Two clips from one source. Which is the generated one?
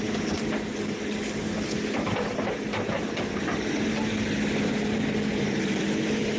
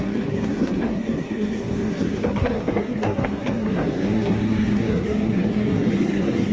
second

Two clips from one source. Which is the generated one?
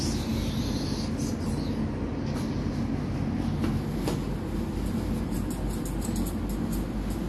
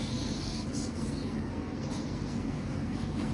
second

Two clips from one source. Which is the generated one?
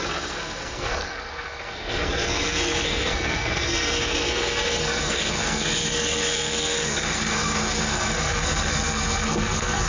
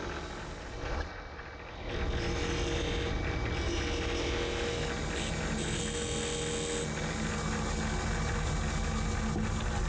first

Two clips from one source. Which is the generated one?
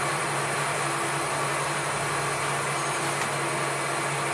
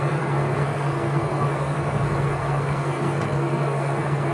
second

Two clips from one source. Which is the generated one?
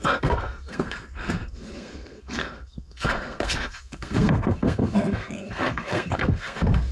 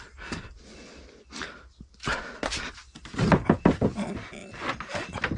first